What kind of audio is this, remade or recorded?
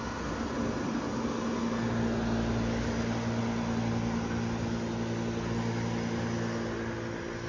recorded